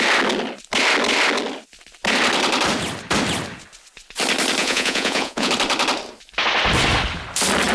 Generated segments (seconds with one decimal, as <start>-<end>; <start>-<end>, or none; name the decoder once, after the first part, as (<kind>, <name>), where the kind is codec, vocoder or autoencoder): 4.6-5.5 (vocoder, Vocos)